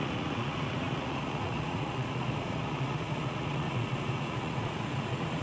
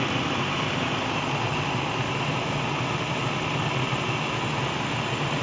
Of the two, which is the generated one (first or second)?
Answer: first